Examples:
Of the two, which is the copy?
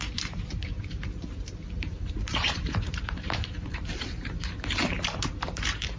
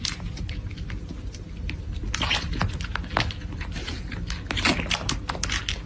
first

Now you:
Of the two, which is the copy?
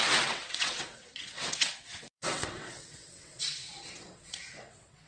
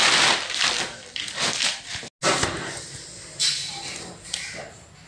first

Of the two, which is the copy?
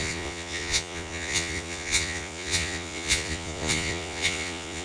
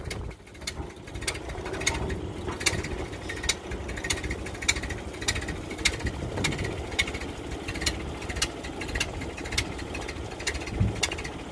first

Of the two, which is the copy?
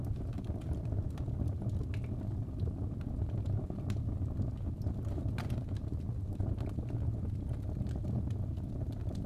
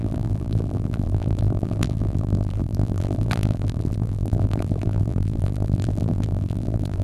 second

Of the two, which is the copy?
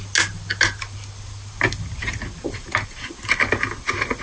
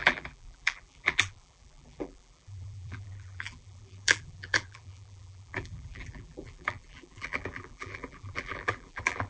second